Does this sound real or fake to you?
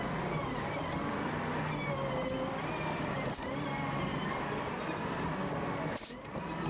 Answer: real